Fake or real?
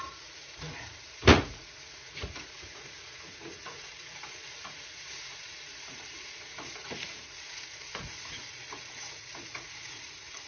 fake